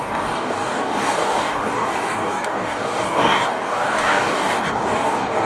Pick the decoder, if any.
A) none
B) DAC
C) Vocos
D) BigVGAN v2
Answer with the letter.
B